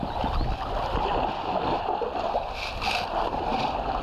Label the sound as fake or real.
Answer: real